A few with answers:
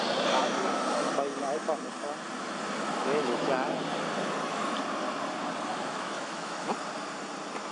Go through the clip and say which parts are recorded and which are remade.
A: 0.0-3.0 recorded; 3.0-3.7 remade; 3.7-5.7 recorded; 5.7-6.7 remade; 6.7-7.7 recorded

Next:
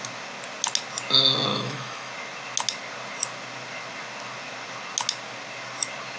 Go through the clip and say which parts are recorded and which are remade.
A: 0.0-1.5 recorded; 1.5-2.1 remade; 2.1-6.2 recorded

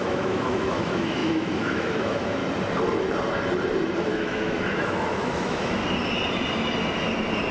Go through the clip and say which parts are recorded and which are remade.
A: 0.0-2.4 remade; 2.4-4.0 recorded; 4.0-5.8 remade; 5.8-7.5 recorded

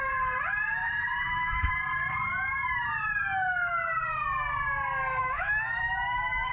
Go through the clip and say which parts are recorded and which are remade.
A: 0.0-0.8 recorded; 0.8-1.7 remade; 1.7-5.2 recorded; 5.2-6.5 remade

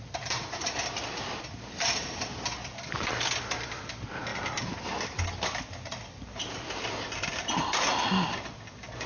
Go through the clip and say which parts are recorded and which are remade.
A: 0.0-9.1 recorded